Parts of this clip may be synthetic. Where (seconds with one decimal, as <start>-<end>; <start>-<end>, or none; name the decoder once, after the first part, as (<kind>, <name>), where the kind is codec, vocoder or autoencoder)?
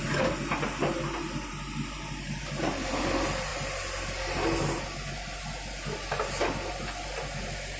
none